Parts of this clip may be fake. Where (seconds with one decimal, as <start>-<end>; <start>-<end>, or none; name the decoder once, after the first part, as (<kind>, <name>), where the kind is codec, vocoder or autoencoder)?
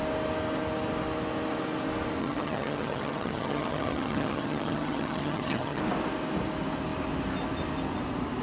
2.2-5.8 (vocoder, HiFi-GAN)